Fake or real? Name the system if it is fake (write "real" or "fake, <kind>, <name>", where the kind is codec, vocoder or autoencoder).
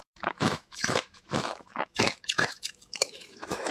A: fake, autoencoder, DAC-VAE